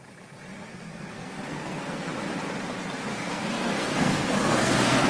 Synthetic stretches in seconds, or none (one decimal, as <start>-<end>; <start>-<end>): 0.7-2.1; 3.1-5.1